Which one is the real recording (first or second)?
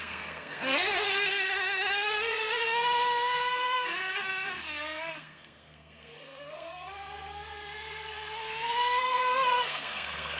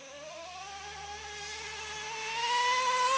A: second